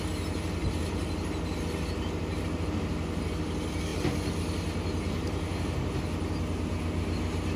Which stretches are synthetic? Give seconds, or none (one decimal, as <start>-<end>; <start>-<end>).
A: none